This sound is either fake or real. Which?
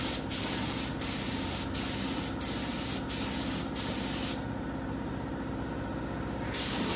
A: real